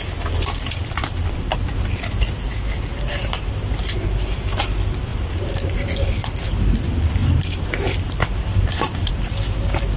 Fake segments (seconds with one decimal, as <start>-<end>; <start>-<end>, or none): 2.9-4.6; 5.1-5.8; 7.2-8.6